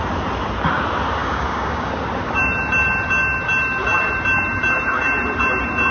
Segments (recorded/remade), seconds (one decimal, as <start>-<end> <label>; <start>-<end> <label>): 0.0-1.2 recorded; 1.2-1.9 remade; 1.9-5.9 recorded